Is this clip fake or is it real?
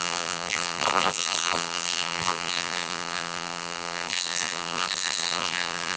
fake